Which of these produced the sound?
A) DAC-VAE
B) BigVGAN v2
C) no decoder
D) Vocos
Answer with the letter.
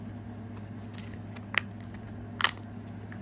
C